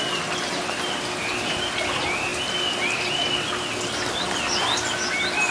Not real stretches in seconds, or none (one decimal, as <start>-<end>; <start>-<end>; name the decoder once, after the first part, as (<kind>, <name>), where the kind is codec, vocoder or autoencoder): none